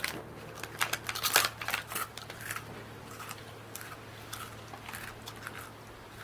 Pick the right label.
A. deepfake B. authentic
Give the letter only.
A